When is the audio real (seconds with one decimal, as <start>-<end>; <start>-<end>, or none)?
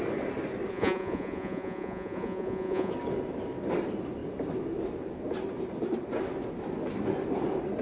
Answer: 0.0-0.7; 2.9-7.8